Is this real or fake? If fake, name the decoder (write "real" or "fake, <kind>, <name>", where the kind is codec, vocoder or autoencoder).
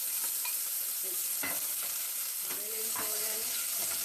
real